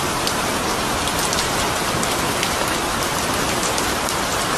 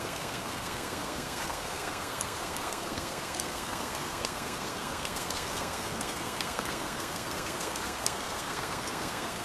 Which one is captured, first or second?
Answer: first